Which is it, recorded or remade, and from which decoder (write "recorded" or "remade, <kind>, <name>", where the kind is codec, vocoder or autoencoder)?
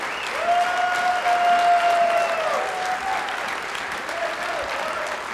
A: recorded